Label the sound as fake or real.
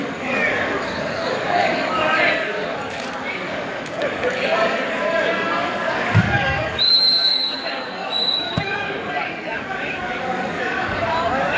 fake